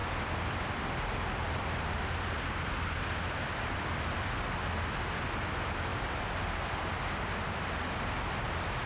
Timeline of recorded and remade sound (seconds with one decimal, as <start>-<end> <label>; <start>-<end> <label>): 0.0-5.0 remade; 5.0-5.9 recorded; 5.9-7.1 remade; 7.1-8.9 recorded